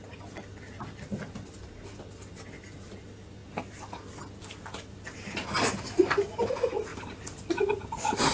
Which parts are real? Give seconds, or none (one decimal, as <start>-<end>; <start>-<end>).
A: 0.0-8.3